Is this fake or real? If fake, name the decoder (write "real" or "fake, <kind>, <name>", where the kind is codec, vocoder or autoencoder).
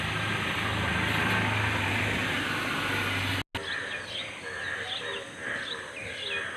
real